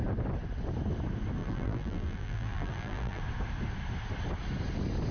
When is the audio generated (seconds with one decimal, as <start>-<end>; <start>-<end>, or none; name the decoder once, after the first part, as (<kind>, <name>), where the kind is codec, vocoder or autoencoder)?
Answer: 1.4-3.2 (vocoder, BigVGAN v2)